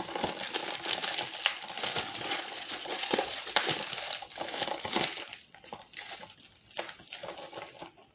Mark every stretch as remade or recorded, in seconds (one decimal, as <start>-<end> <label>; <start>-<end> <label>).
0.0-2.1 recorded; 2.1-3.5 remade; 3.5-5.3 recorded; 5.3-6.2 remade; 6.2-8.1 recorded